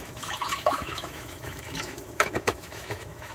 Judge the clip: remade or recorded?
remade